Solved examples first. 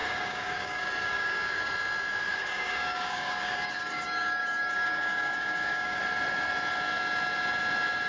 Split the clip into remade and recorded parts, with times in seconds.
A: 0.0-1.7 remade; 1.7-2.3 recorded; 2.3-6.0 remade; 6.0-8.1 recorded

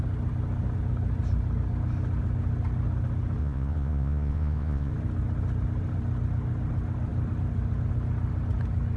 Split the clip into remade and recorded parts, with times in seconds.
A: 0.0-3.4 recorded; 3.4-4.9 remade; 4.9-9.0 recorded

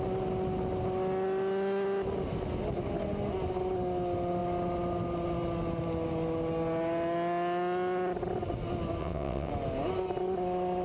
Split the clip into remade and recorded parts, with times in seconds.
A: 0.0-9.0 recorded; 9.0-9.5 remade; 9.5-10.8 recorded

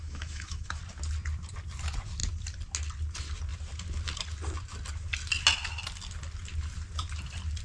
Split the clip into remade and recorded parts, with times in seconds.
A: 0.0-0.8 remade; 0.8-7.6 recorded

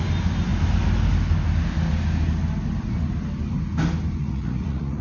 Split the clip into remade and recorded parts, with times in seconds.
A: 0.0-4.2 recorded; 4.2-5.0 remade

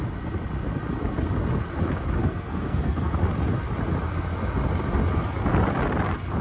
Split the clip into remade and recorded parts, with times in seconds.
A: 0.0-2.2 recorded; 2.2-3.1 remade; 3.1-6.4 recorded